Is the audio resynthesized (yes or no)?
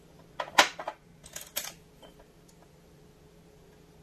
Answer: no